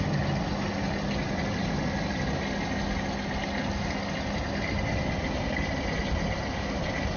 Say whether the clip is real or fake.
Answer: real